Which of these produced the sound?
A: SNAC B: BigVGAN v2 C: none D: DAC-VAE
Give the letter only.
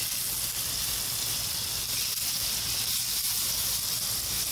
C